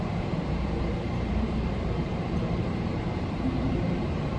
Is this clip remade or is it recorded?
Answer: remade